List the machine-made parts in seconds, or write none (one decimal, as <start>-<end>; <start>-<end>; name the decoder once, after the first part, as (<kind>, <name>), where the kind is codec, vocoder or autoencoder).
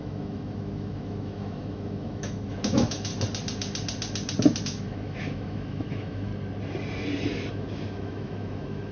0.0-3.1 (autoencoder, DAC-VAE); 4.6-6.3; 7.5-8.9